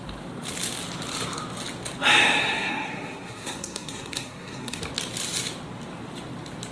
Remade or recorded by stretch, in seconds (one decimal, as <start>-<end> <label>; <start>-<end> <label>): 0.0-2.4 recorded; 2.4-4.8 remade; 4.8-6.7 recorded